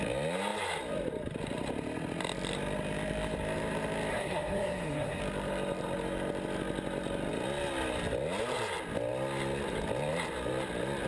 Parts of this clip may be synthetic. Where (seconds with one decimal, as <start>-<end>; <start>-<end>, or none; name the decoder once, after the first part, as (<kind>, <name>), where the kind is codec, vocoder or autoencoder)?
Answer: 4.1-5.2 (codec, SNAC)